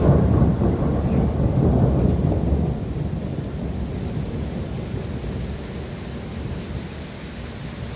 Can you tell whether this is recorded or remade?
recorded